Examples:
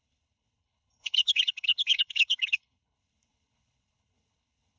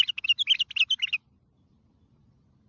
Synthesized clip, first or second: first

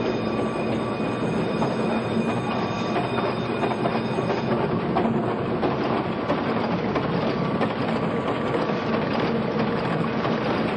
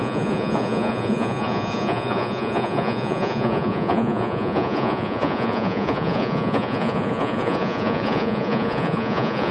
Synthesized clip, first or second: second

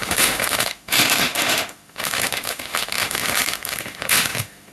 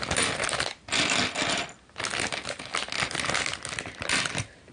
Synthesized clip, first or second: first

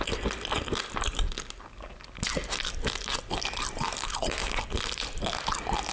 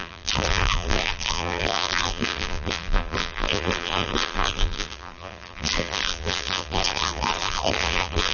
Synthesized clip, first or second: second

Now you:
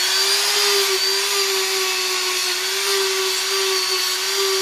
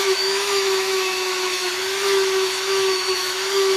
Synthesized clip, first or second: second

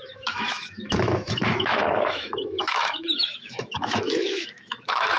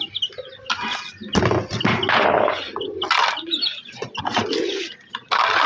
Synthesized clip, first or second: first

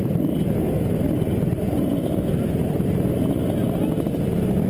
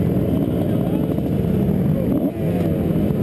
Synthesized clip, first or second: first